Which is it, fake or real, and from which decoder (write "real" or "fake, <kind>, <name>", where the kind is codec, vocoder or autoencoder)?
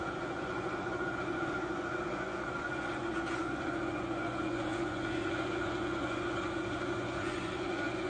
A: fake, vocoder, Vocos